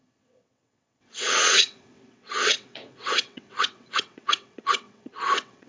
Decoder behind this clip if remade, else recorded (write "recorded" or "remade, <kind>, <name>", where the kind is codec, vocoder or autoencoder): remade, vocoder, WaveNeXt